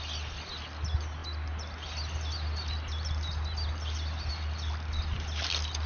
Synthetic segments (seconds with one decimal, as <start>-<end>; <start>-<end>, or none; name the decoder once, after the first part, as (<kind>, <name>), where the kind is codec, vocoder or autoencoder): none